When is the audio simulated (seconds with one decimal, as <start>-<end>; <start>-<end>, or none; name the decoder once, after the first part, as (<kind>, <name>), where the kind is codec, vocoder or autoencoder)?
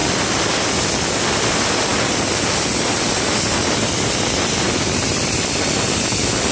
1.9-5.1 (vocoder, BigVGAN v2)